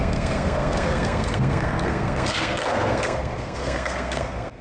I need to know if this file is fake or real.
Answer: fake